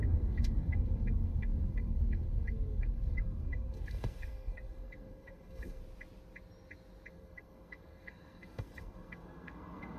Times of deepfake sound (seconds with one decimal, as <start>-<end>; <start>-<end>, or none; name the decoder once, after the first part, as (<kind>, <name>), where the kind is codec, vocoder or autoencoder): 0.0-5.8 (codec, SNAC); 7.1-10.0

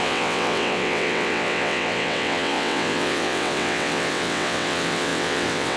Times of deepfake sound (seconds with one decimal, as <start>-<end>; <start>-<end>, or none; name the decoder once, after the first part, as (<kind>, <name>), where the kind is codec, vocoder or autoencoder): 0.0-5.8 (vocoder, WaveNeXt)

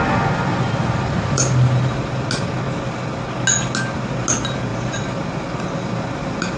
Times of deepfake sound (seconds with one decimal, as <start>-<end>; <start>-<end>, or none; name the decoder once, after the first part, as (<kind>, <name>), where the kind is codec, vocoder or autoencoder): 4.7-5.2 (vocoder, BigVGAN v2)